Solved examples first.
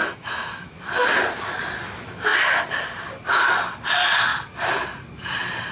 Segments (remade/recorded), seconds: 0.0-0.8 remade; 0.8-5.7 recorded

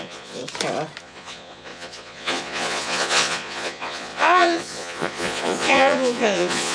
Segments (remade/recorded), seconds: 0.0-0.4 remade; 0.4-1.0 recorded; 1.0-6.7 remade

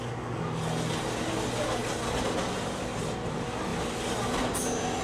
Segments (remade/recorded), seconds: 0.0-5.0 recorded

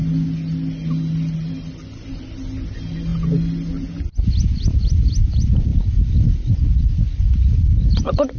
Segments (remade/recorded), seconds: 0.0-8.4 recorded

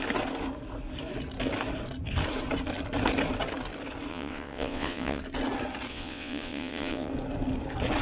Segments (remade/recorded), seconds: 0.0-4.1 recorded; 4.1-5.2 remade; 5.2-5.9 recorded; 5.9-7.1 remade; 7.1-8.0 recorded

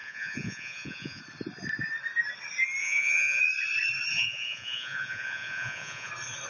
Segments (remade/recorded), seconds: 0.0-1.2 remade; 1.2-2.8 recorded; 2.8-3.4 remade; 3.4-4.1 recorded; 4.1-6.1 remade; 6.1-6.5 recorded

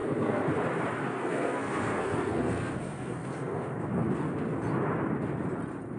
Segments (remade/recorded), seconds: 0.0-0.5 remade; 0.5-1.0 recorded; 1.0-4.1 remade; 4.1-6.0 recorded

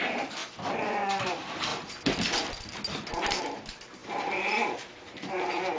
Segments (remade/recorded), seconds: 0.0-0.4 remade; 0.4-1.2 recorded; 1.2-1.7 remade; 1.7-3.4 recorded; 3.4-5.8 remade